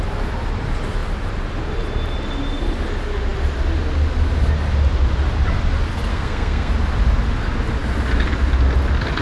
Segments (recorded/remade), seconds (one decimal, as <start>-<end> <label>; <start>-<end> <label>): 0.0-6.1 recorded; 6.1-6.7 remade; 6.7-9.2 recorded